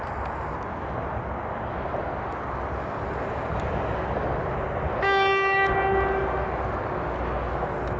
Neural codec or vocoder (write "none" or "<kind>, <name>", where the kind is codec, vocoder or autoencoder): none